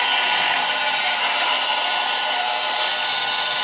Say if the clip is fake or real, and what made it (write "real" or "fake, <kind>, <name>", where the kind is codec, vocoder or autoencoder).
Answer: real